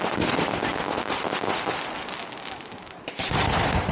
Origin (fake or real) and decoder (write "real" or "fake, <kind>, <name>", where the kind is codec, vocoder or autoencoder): real